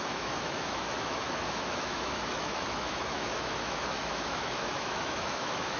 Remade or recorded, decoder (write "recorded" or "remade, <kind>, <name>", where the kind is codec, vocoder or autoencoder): remade, autoencoder, DAC-VAE